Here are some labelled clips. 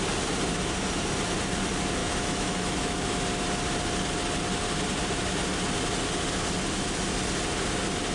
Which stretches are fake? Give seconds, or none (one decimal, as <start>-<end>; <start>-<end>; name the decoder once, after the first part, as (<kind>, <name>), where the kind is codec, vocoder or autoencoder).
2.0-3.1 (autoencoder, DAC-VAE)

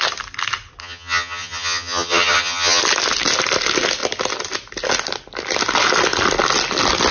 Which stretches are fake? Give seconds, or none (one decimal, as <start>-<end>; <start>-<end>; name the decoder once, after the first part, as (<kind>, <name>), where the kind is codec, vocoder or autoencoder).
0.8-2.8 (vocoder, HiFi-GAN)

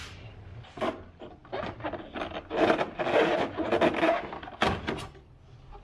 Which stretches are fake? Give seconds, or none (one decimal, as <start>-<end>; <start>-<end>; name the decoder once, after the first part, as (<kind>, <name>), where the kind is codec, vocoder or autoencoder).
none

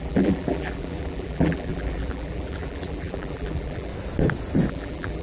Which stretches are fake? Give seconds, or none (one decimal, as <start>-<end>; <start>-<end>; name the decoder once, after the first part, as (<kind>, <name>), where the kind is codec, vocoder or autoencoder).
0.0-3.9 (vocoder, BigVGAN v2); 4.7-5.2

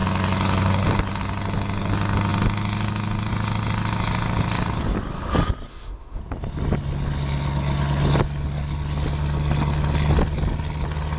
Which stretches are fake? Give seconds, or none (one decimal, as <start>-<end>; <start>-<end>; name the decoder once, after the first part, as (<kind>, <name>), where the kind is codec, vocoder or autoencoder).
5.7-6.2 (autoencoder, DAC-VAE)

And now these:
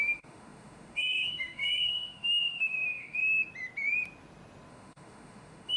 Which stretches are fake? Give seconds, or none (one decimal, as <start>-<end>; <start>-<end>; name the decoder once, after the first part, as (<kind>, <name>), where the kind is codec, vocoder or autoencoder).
0.0-3.2 (autoencoder, DAC-VAE); 4.7-5.8